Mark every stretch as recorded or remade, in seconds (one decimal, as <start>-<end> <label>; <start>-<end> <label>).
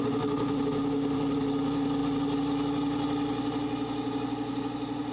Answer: 0.0-5.1 recorded